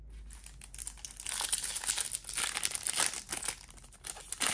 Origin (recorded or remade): recorded